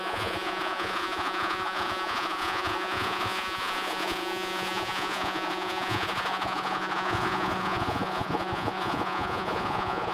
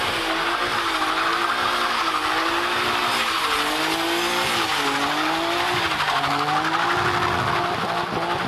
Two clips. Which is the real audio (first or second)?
second